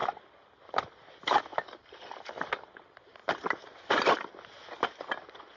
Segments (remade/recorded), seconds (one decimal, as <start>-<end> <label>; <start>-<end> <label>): 0.0-0.8 remade; 0.8-3.2 recorded; 3.2-3.8 remade; 3.8-5.6 recorded